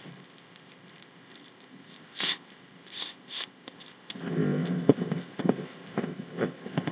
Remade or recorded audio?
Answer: remade